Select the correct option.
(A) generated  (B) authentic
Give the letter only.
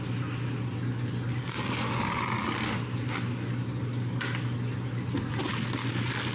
B